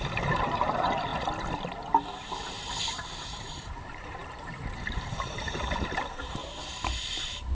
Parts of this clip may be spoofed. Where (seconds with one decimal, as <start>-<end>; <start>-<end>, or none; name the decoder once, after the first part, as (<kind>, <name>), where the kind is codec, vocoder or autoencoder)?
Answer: 0.0-1.1 (vocoder, BigVGAN v2); 3.2-6.4; 7.1-7.5